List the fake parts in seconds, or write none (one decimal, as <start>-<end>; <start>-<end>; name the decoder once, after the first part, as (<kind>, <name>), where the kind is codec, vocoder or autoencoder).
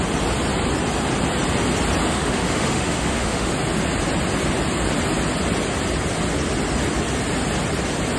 2.1-3.5 (autoencoder, DAC-VAE)